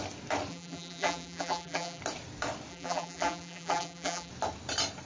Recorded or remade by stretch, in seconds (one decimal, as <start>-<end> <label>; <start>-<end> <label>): 0.0-0.5 recorded; 0.5-2.0 remade; 2.0-2.7 recorded; 2.7-4.3 remade; 4.3-5.1 recorded